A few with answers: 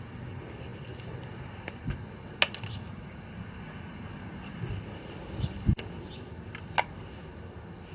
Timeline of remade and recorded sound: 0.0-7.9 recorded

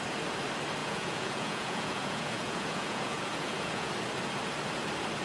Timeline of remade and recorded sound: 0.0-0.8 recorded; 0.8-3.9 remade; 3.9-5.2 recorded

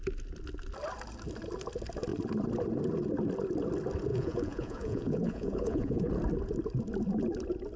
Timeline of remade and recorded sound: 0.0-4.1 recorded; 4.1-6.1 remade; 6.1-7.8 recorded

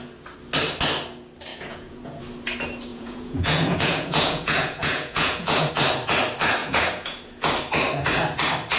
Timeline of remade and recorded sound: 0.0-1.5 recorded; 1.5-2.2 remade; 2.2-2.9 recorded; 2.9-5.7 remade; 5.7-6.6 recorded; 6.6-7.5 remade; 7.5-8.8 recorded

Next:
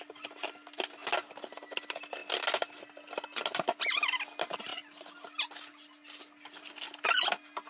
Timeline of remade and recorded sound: 0.0-7.7 recorded